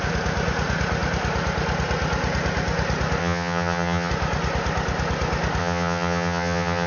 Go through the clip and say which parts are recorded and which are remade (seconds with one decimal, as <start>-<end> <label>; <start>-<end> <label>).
0.0-3.2 recorded; 3.2-4.1 remade; 4.1-5.6 recorded; 5.6-6.9 remade